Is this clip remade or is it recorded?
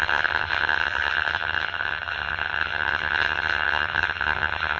remade